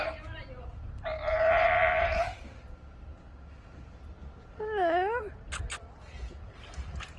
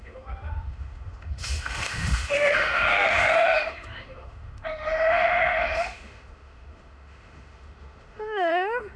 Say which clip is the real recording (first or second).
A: first